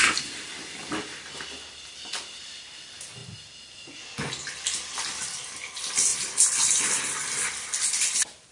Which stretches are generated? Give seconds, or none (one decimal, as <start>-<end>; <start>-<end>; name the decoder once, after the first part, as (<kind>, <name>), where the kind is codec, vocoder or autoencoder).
none